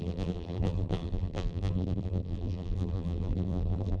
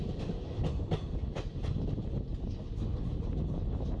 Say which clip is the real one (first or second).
second